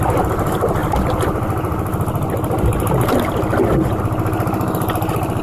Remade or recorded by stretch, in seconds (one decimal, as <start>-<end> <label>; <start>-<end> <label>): 0.0-5.4 recorded